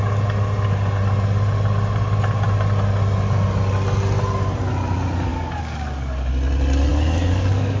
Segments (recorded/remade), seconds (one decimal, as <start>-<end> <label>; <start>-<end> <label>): 0.0-5.3 recorded; 5.3-6.3 remade; 6.3-6.9 recorded; 6.9-7.8 remade